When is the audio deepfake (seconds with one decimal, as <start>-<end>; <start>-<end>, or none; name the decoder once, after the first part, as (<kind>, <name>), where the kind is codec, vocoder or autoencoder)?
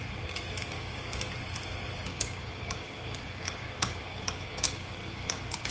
0.6-1.3 (codec, DAC); 2.1-5.7